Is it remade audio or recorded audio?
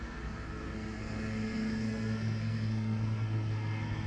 remade